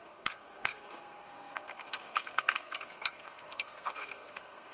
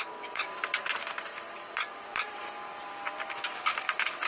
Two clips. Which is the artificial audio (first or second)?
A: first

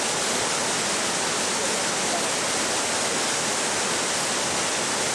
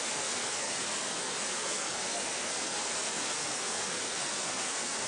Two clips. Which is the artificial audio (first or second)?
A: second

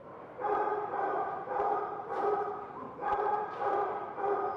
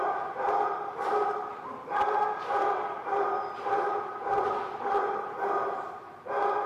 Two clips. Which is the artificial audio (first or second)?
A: first